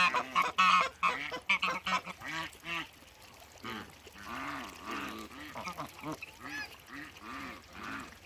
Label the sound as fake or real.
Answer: real